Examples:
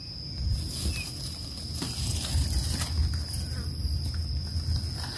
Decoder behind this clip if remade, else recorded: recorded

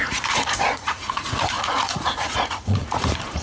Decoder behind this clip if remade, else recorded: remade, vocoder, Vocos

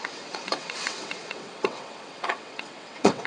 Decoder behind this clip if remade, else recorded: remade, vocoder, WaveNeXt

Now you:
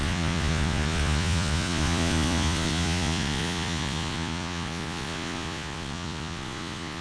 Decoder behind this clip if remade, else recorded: remade, vocoder, Vocos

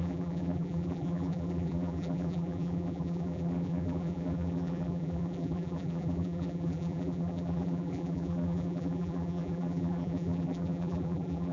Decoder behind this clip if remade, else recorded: remade, vocoder, BigVGAN v2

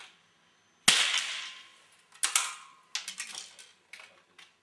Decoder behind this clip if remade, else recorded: recorded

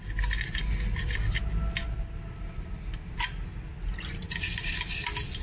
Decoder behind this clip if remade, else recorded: recorded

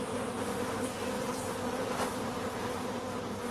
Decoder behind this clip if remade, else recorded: recorded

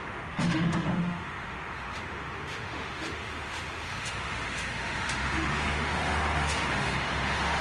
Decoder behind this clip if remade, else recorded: remade, autoencoder, DAC-VAE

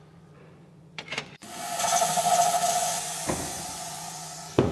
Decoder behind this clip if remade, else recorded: remade, vocoder, Vocos